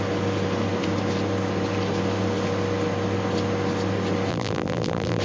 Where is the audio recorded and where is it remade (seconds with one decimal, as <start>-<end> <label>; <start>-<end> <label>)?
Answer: 0.0-4.3 recorded; 4.3-5.2 remade